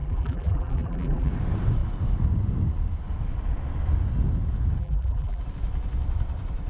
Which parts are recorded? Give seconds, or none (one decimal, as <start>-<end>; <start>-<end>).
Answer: 1.3-4.8; 5.4-6.7